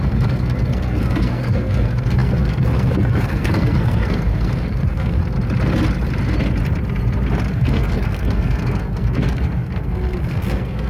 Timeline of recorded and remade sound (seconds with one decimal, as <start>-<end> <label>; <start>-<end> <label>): 0.0-5.2 remade; 5.2-7.5 recorded; 7.5-10.9 remade